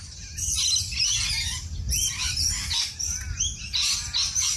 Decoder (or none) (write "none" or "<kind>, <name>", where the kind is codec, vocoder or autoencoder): none